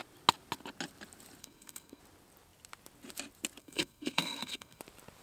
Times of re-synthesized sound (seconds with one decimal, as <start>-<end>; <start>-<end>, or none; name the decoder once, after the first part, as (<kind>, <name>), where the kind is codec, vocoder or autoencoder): 1.4-2.0 (codec, SNAC); 3.6-4.8